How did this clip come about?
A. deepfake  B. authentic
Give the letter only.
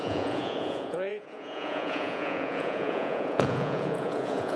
A